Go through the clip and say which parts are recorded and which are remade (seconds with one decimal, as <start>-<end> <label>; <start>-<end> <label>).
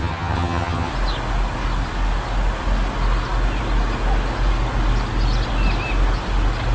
0.0-0.9 remade; 0.9-6.7 recorded